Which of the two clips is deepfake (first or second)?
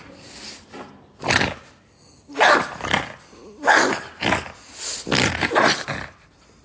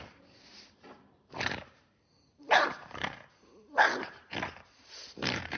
second